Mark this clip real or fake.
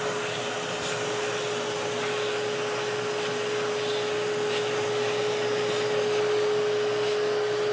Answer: real